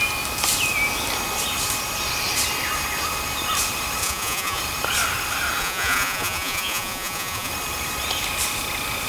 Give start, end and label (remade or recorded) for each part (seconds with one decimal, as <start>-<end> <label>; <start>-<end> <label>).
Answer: 0.0-4.0 recorded; 4.0-4.6 remade; 4.6-5.6 recorded; 5.6-7.5 remade; 7.5-9.1 recorded